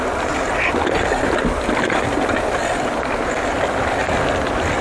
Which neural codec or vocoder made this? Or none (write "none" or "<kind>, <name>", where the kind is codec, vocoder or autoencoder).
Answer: none